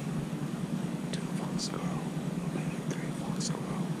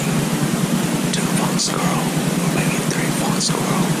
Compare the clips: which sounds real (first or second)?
second